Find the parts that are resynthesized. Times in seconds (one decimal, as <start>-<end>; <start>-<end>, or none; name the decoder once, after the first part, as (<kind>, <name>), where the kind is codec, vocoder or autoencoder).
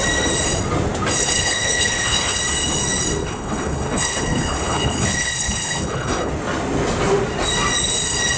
1.2-2.4 (codec, HILCodec); 3.2-6.3